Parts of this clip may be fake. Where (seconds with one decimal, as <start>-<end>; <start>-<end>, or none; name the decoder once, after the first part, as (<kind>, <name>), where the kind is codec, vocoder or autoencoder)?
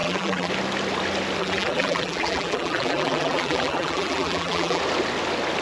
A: 0.0-0.5 (vocoder, BigVGAN v2); 1.4-4.8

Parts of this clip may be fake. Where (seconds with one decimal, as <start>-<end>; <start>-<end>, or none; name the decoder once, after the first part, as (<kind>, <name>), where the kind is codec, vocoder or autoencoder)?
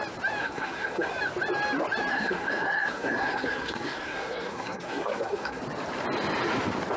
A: 0.4-1.1 (codec, SNAC); 2.1-5.6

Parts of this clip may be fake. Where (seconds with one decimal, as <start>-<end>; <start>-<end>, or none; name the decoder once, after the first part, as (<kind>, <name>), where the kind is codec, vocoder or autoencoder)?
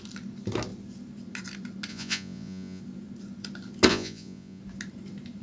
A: 1.9-2.8 (vocoder, Vocos); 3.9-4.6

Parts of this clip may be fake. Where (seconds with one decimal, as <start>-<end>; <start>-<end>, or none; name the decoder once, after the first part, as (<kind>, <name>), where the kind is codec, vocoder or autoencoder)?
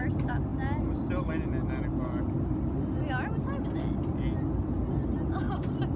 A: none